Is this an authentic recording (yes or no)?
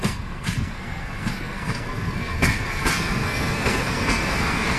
no